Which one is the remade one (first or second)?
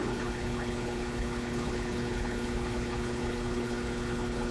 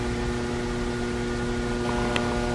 first